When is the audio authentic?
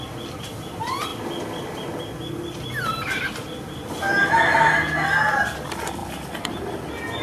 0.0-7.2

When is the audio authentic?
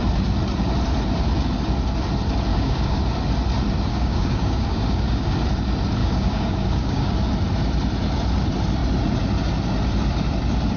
0.0-2.5; 3.0-3.9; 5.2-6.0; 7.1-10.8